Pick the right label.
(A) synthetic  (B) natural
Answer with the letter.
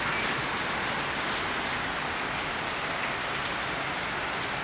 B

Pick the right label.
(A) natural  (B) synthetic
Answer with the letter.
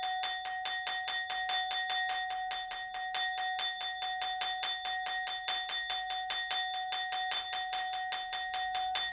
A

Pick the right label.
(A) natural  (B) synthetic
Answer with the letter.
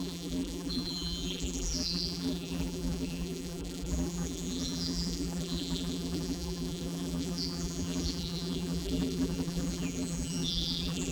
B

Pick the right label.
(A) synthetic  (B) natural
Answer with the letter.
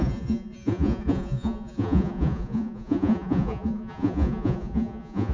A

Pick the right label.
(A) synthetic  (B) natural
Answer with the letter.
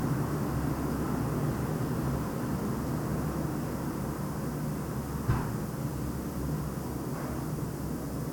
B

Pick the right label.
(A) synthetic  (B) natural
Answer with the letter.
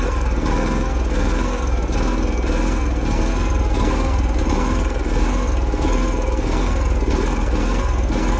A